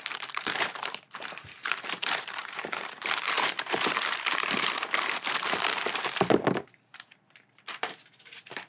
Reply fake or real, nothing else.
fake